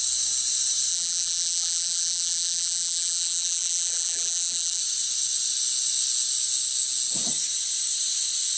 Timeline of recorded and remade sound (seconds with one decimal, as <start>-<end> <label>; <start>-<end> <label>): 0.0-0.9 recorded; 0.9-4.8 remade; 4.8-8.6 recorded